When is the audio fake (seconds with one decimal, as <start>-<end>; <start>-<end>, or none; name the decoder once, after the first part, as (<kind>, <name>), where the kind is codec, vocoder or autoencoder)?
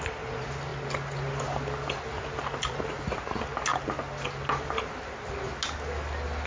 none